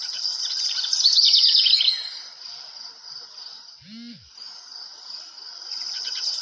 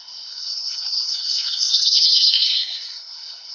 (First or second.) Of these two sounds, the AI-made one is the second